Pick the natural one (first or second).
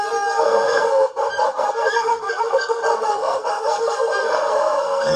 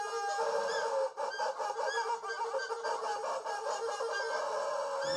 second